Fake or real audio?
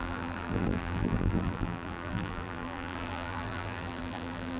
fake